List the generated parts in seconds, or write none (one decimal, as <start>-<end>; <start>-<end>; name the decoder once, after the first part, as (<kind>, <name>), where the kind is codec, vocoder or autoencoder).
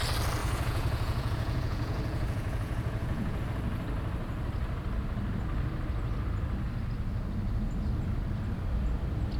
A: 0.4-3.4 (vocoder, Vocos)